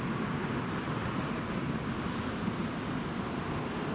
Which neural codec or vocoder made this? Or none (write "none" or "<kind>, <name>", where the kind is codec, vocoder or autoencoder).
none